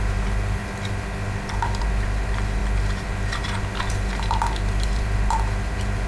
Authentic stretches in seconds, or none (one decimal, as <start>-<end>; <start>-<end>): 0.6-1.6